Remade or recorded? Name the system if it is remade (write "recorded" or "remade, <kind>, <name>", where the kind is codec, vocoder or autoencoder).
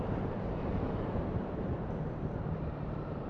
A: remade, vocoder, BigVGAN v2